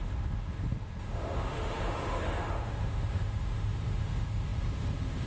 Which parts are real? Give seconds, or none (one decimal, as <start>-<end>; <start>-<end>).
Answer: none